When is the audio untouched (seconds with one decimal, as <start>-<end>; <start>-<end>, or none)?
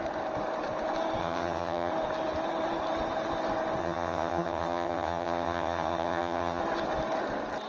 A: 0.0-1.2; 1.9-3.8; 6.6-7.7